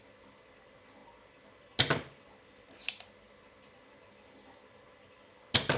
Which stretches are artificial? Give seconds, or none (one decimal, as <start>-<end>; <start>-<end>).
none